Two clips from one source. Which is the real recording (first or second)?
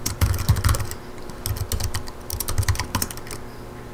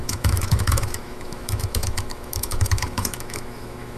first